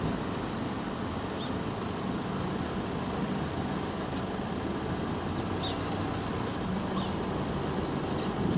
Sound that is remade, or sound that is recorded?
recorded